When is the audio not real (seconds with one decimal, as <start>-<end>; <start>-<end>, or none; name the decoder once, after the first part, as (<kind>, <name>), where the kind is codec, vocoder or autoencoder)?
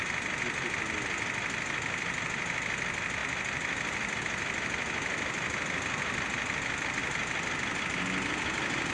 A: 7.0-7.8 (vocoder, BigVGAN v2)